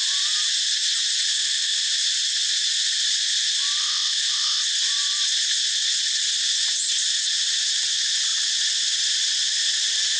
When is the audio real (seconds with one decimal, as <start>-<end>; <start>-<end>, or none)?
0.0-1.3; 1.9-3.8; 4.6-10.2